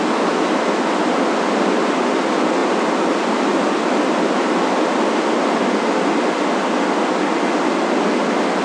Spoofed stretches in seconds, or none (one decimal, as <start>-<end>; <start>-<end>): none